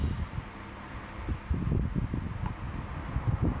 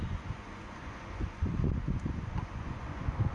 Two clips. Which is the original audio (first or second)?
first